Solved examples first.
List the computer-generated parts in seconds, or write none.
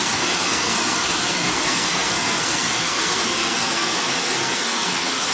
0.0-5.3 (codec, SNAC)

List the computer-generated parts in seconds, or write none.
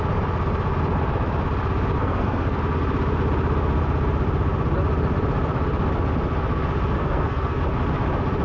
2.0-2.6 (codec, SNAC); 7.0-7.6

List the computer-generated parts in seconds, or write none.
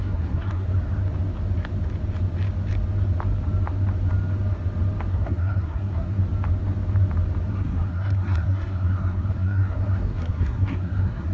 0.0-0.7 (codec, SNAC); 5.1-6.2; 7.5-11.3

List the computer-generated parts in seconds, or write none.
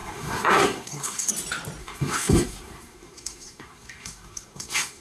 0.0-1.3 (codec, SNAC); 1.8-5.0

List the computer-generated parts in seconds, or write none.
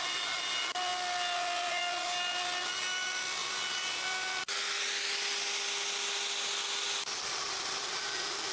none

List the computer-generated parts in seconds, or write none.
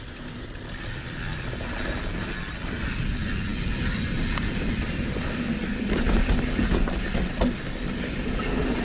none